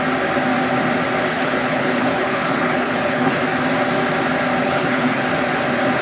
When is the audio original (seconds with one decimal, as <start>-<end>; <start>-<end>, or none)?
0.0-1.3; 3.4-4.6; 5.2-6.0